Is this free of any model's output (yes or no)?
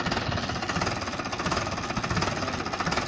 yes